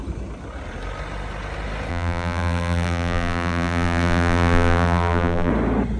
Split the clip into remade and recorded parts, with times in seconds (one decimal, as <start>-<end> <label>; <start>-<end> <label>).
0.0-1.9 recorded; 1.9-5.5 remade; 5.5-6.0 recorded